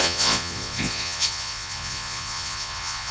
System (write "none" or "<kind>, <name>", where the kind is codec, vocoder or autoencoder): vocoder, Vocos